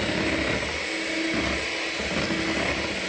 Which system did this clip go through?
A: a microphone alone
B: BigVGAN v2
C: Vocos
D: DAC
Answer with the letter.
A